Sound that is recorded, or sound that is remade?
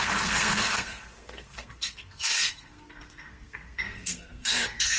remade